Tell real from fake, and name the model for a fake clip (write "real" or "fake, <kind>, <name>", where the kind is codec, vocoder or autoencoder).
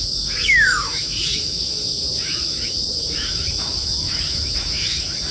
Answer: fake, autoencoder, DAC-VAE